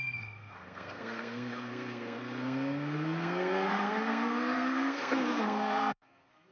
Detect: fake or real fake